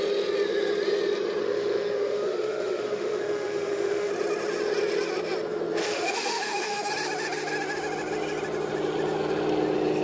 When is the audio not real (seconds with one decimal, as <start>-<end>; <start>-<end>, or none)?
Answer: 1.4-4.1; 5.8-6.9